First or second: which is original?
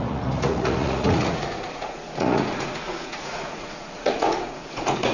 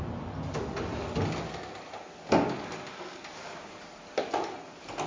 second